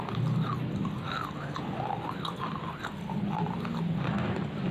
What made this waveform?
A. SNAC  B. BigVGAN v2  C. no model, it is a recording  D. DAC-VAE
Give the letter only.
C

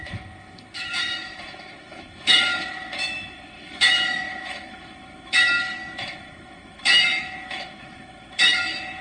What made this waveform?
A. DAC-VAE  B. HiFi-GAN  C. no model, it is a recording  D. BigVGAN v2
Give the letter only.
A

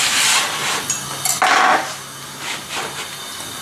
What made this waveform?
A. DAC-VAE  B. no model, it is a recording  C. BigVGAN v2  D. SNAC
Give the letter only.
B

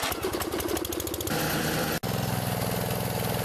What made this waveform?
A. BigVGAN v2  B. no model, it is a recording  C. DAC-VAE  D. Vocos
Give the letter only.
B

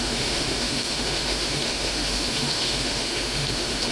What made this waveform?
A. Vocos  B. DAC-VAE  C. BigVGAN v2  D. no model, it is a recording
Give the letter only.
B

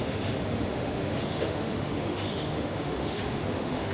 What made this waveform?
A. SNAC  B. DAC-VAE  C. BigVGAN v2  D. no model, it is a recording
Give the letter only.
B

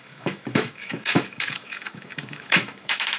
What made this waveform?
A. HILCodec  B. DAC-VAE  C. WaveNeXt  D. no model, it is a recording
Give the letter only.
B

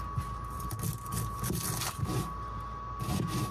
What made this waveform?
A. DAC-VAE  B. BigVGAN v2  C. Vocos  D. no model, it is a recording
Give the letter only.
D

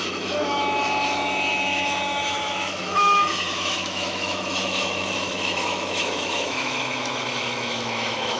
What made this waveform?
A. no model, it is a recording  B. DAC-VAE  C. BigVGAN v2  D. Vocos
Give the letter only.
B